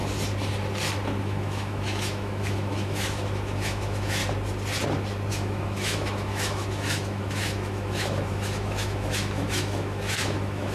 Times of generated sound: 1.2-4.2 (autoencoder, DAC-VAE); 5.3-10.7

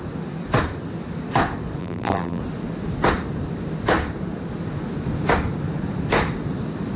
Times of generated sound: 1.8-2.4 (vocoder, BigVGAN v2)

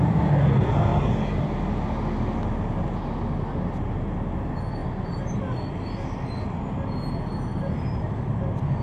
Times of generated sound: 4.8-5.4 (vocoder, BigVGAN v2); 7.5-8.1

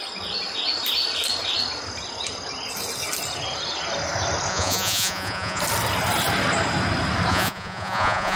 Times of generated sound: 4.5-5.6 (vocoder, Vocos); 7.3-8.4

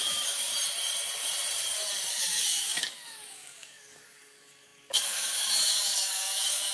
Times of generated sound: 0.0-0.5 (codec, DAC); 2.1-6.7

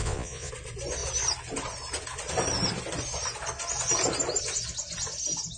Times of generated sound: 0.0-0.5 (vocoder, Vocos)

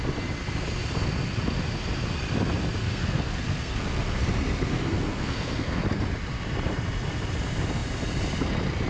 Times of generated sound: 2.8-4.2 (codec, SNAC); 4.7-5.8

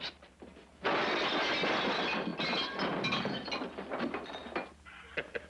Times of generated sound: none